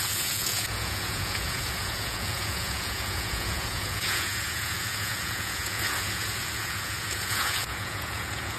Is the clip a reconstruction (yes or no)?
yes